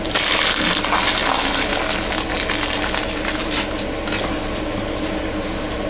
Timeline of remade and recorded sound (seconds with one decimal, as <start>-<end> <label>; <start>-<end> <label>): 0.0-5.9 recorded